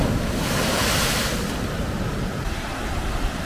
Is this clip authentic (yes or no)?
yes